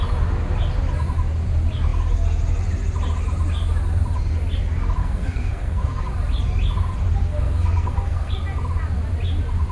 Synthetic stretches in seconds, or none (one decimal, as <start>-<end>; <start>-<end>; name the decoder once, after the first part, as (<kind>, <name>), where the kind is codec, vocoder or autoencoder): 5.0-6.0 (codec, SNAC); 7.2-8.3